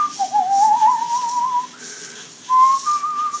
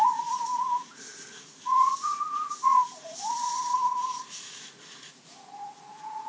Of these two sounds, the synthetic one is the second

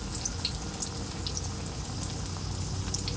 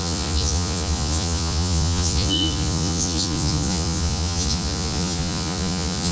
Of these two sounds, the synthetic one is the second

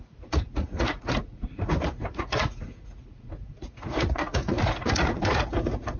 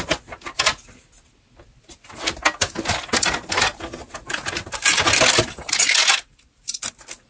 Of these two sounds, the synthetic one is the first